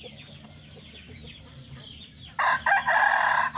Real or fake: real